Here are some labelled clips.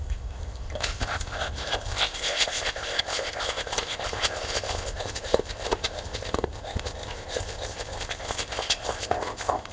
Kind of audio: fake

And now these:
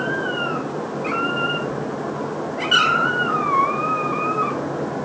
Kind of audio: real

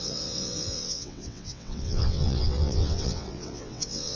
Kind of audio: fake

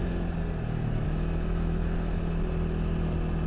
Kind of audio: real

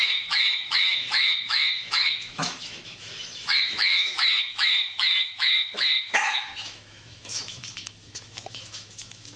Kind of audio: fake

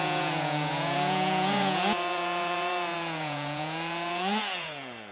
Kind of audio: fake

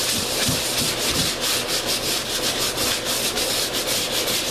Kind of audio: real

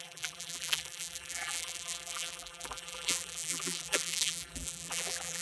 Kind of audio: fake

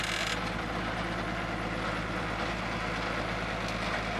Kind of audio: real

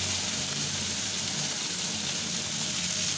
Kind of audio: fake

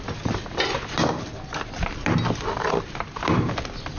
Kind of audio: real